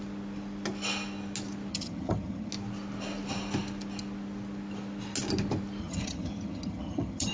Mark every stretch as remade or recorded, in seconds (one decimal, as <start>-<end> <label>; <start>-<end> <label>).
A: 0.0-1.7 recorded; 1.7-2.5 remade; 2.5-5.8 recorded; 5.8-7.3 remade